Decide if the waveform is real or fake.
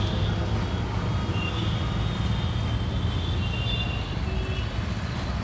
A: real